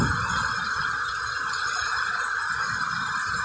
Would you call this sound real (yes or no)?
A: yes